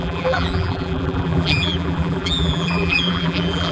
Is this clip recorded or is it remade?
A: remade